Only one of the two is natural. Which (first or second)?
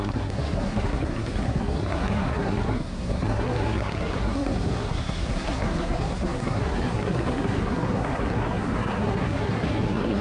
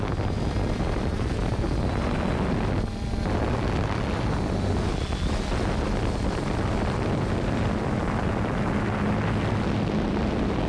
second